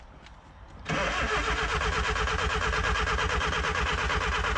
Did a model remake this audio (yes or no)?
no